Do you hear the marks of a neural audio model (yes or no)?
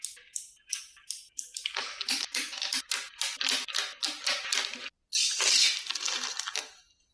no